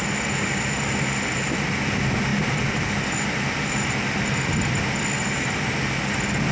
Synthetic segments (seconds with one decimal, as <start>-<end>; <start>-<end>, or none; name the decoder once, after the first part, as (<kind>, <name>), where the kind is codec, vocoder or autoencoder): none